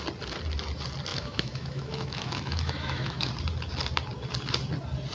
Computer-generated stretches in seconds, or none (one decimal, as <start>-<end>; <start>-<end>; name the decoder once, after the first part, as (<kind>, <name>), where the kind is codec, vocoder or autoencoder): 1.1-3.3 (autoencoder, DAC-VAE)